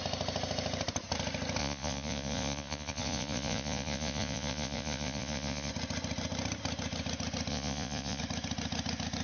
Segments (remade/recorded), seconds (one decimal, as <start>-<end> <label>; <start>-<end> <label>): 0.0-1.6 recorded; 1.6-5.7 remade; 5.7-7.5 recorded; 7.5-8.2 remade; 8.2-9.2 recorded